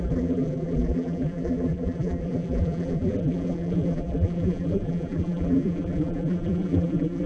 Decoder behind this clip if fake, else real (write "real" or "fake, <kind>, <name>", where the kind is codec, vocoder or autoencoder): fake, vocoder, BigVGAN v2